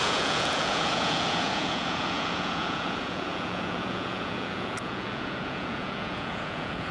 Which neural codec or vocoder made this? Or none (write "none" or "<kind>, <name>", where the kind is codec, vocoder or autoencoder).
vocoder, Vocos